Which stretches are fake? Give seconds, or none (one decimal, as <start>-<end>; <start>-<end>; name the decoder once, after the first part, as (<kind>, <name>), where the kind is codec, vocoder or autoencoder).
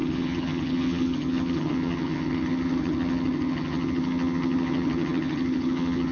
0.0-6.1 (vocoder, HiFi-GAN)